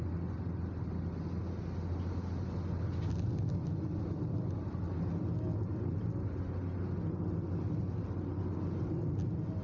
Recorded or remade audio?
recorded